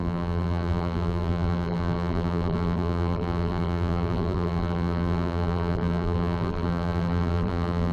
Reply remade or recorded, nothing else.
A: remade